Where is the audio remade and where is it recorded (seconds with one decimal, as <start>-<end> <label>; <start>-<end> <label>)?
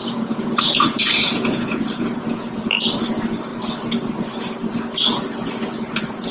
0.0-2.6 remade; 2.6-6.3 recorded